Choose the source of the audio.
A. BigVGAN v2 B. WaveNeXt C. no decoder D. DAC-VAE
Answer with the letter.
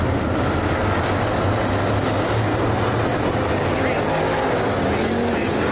C